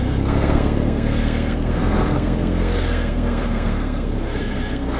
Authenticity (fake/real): fake